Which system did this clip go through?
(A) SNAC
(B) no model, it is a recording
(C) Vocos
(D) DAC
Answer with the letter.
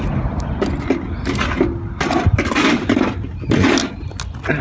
B